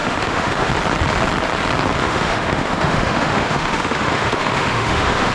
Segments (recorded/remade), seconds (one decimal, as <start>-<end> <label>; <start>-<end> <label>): 0.0-0.7 remade; 0.7-2.0 recorded; 2.0-5.3 remade